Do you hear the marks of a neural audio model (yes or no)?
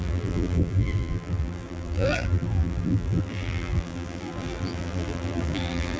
yes